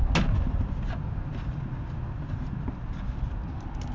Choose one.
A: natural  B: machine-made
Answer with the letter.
A